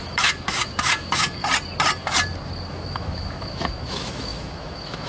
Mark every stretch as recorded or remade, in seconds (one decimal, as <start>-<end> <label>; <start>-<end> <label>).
0.0-1.4 remade; 1.4-2.7 recorded; 2.7-5.1 remade